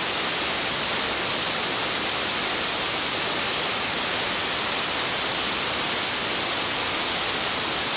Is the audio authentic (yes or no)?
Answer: yes